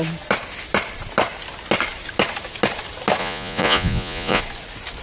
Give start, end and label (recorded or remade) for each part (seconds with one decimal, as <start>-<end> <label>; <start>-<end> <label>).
0.0-3.2 recorded; 3.2-4.4 remade; 4.4-5.0 recorded